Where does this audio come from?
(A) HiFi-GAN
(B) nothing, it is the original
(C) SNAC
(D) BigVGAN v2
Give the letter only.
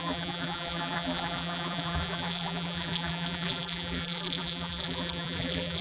D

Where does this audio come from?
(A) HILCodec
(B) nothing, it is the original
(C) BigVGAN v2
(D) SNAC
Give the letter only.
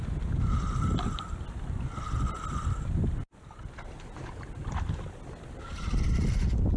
B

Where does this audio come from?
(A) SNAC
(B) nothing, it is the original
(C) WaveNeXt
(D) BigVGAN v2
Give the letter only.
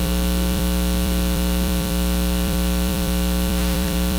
D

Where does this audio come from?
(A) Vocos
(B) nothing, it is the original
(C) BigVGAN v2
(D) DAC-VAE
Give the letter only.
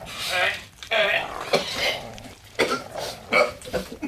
C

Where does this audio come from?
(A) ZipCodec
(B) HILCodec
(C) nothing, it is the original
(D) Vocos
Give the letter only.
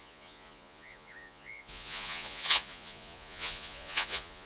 D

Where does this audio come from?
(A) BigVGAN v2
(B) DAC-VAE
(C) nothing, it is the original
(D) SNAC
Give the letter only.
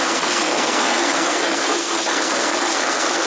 D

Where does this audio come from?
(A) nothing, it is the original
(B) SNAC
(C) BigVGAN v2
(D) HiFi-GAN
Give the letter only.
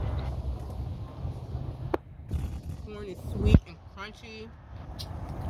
A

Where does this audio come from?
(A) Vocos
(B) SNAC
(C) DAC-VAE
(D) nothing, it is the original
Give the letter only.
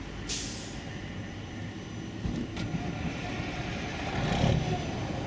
D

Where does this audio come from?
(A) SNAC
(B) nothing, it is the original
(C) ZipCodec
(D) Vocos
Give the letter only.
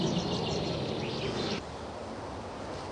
B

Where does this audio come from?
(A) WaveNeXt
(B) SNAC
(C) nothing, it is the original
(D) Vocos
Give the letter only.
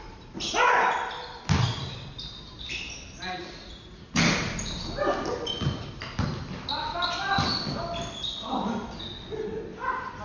C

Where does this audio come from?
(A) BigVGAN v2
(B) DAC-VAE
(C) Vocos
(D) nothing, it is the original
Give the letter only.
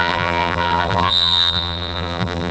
A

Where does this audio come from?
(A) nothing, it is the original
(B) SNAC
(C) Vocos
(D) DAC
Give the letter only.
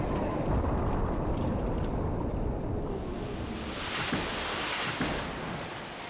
A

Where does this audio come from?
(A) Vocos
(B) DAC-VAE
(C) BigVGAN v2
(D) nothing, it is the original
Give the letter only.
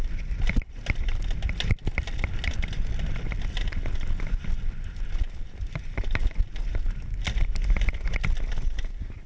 D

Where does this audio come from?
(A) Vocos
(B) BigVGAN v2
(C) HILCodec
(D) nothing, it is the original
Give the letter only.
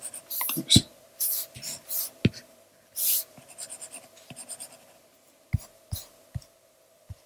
D